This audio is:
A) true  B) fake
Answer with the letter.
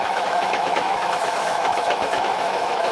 B